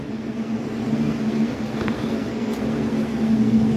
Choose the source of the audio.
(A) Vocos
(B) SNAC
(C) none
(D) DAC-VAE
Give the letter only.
B